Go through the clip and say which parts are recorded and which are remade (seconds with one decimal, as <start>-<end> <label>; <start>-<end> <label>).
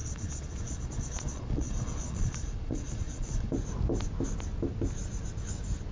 0.0-3.5 remade; 3.5-5.9 recorded